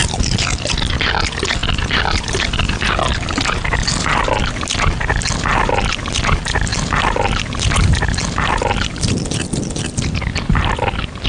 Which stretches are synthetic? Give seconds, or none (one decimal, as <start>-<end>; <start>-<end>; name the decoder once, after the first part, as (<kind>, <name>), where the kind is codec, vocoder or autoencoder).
0.0-0.7 (vocoder, BigVGAN v2); 1.6-4.6; 6.7-9.9